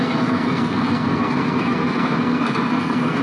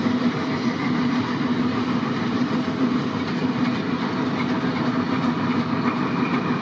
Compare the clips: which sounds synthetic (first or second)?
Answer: first